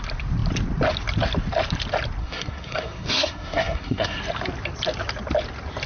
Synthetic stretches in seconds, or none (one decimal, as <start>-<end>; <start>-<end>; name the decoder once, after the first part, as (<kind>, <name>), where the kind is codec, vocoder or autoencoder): 2.2-4.2 (codec, SNAC)